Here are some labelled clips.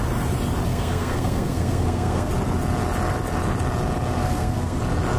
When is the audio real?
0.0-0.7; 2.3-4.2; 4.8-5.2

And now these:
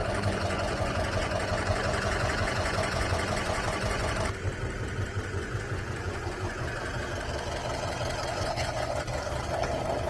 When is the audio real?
4.1-5.3; 7.0-8.3; 9.0-10.1

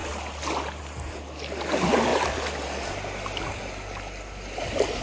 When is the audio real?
0.0-5.0